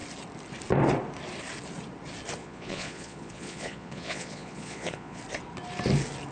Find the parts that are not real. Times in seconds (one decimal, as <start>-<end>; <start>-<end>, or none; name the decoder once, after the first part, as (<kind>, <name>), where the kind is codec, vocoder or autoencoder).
2.4-5.2 (vocoder, Vocos)